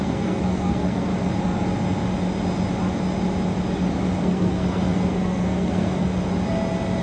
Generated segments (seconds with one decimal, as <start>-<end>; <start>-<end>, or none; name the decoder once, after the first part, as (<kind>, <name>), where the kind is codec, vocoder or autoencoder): 0.0-1.1 (codec, SNAC); 4.2-6.1